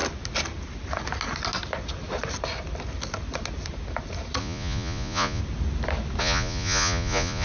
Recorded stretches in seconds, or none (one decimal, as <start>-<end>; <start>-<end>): 0.0-4.4; 5.4-6.2